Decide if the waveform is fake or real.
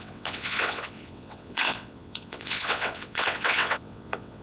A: fake